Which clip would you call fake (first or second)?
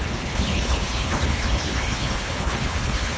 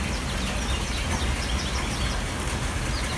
first